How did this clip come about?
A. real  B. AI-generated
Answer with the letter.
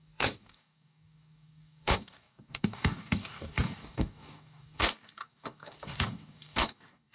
B